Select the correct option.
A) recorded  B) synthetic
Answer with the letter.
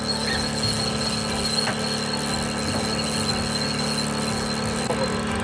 A